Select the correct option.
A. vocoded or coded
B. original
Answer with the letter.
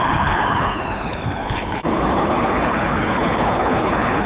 A